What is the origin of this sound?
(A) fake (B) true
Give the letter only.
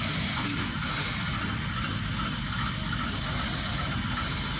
B